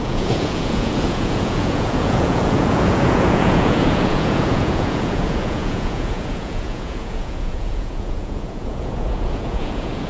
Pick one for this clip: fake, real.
fake